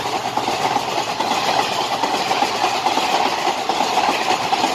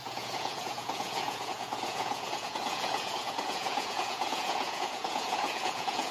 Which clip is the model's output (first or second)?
second